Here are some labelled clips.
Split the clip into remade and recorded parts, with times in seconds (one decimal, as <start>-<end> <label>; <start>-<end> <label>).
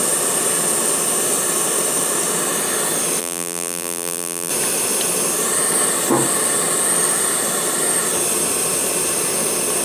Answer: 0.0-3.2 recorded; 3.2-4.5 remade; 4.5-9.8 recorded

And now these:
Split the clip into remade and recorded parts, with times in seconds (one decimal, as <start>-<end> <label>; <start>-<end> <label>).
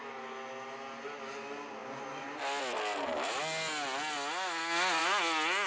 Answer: 0.0-5.7 recorded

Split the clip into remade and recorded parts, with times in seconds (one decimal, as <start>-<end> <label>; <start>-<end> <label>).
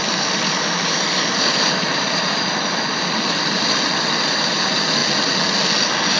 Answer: 0.0-5.0 remade; 5.0-6.2 recorded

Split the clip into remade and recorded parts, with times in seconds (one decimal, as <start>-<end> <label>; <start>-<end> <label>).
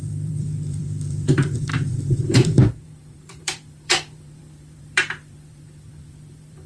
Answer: 0.0-6.7 remade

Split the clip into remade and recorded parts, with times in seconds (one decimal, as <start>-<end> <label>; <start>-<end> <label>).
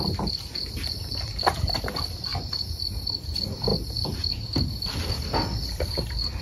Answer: 0.0-2.3 recorded; 2.3-2.8 remade; 2.8-6.4 recorded